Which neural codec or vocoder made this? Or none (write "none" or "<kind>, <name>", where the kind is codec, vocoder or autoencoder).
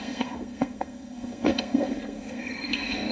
codec, SNAC